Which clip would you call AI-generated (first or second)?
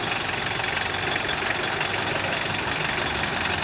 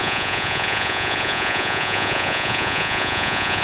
second